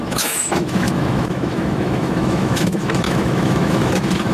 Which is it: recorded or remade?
remade